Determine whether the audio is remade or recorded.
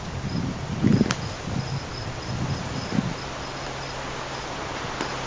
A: recorded